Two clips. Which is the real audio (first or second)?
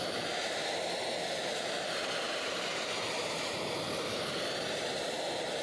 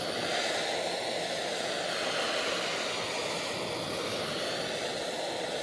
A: second